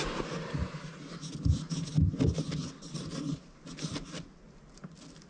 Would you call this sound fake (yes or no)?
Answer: no